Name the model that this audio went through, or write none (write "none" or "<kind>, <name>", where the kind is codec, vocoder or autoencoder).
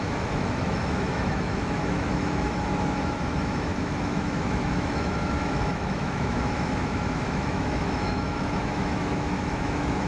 autoencoder, DAC-VAE